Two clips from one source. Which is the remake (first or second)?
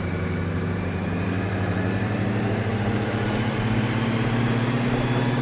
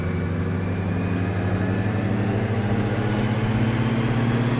first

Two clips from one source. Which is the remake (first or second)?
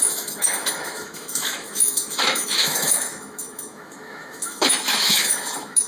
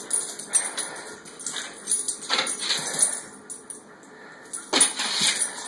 first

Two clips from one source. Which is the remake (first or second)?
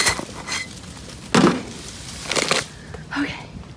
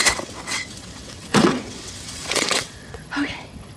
second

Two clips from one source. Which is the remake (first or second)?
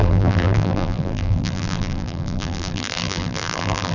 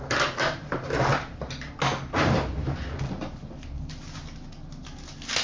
first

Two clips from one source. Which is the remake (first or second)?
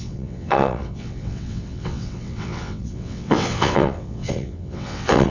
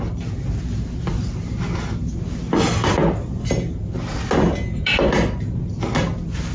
first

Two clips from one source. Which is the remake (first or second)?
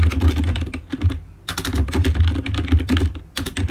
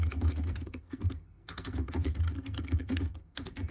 second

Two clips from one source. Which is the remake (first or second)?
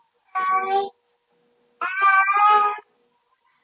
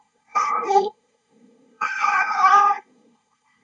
second